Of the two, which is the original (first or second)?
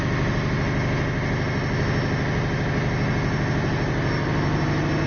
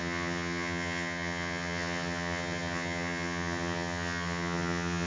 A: first